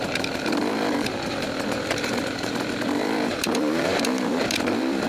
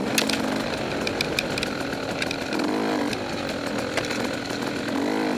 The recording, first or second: second